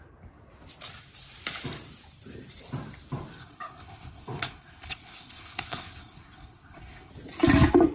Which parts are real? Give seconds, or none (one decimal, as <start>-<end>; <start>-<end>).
0.0-3.4; 7.1-7.9